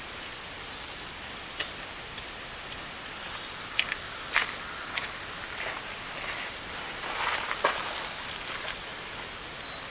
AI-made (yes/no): yes